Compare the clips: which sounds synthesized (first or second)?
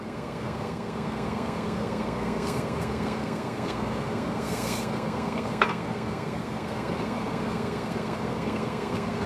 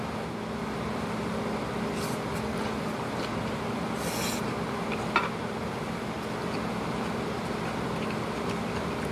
first